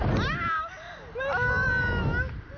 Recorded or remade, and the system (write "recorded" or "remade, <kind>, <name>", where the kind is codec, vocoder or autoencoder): recorded